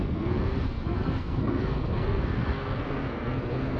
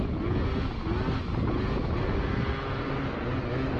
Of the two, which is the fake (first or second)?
first